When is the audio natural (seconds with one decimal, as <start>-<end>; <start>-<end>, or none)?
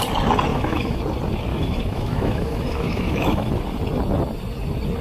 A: 0.0-0.5; 1.0-1.5; 3.5-5.0